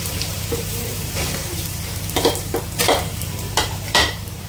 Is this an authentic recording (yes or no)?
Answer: no